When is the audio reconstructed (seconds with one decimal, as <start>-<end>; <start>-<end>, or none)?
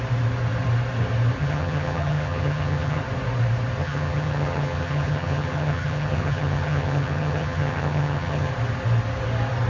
1.4-3.0; 3.8-8.5